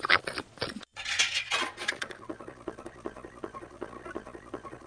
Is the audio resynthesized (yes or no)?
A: yes